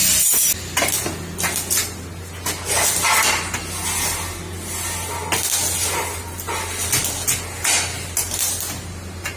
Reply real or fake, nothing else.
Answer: real